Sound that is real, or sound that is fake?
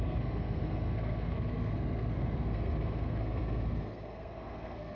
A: fake